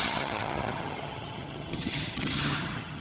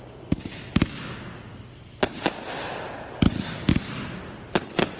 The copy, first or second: first